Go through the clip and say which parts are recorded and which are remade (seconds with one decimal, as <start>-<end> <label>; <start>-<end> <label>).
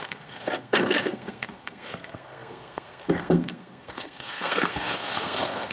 0.0-5.7 remade